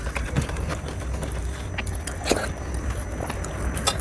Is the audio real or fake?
real